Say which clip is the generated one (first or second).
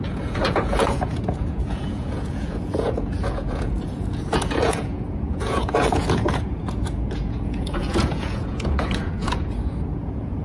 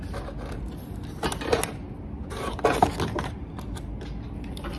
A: first